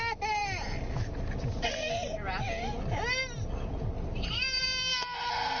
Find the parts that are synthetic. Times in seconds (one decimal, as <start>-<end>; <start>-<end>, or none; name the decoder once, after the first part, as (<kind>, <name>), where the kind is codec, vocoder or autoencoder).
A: none